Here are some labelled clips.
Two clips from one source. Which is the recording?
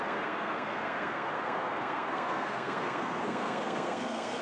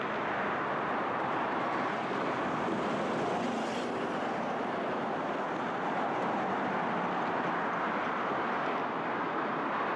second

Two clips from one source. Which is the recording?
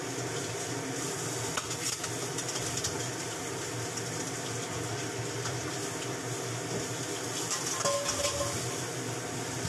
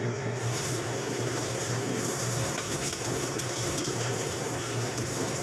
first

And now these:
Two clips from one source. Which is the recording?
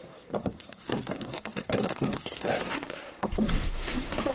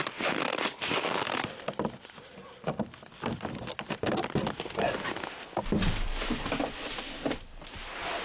second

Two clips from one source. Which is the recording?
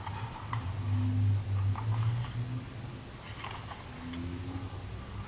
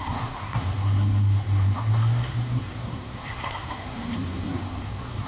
first